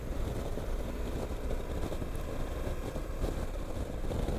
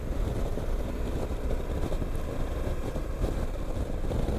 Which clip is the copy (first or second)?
second